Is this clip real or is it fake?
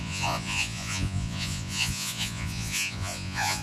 fake